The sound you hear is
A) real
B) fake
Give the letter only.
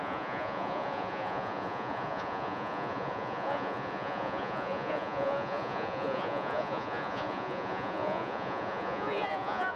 B